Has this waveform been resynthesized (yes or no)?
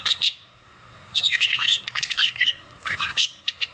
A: yes